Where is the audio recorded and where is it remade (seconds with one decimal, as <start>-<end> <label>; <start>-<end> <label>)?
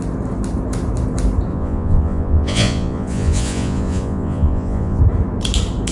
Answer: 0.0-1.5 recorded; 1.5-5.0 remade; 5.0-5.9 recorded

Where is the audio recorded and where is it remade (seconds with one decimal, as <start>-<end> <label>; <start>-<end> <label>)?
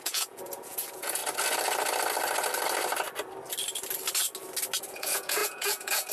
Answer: 0.0-1.2 remade; 1.2-4.9 recorded; 4.9-6.1 remade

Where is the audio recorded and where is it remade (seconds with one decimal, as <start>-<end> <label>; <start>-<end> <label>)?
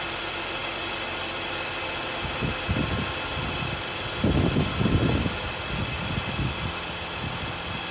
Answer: 0.0-7.9 recorded